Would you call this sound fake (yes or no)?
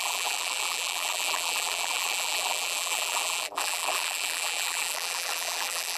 yes